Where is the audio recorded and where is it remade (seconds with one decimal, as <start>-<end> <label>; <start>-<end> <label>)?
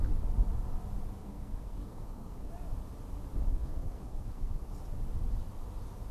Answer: 0.0-1.2 recorded; 1.2-2.5 remade; 2.5-3.5 recorded; 3.5-4.7 remade; 4.7-6.1 recorded